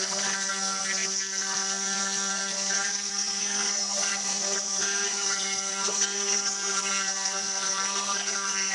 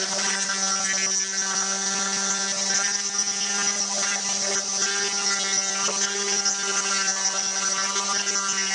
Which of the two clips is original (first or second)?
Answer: second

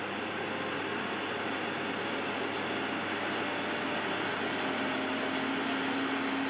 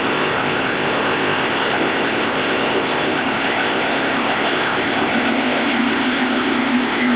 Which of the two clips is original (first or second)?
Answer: first